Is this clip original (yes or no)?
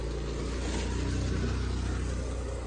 yes